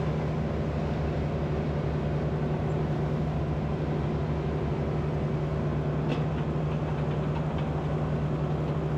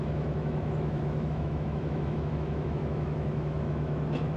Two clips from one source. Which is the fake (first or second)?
second